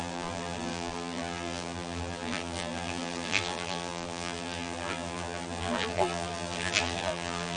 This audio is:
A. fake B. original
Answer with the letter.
A